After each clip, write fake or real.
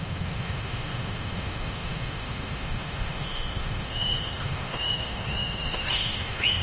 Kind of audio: fake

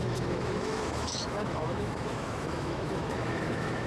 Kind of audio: fake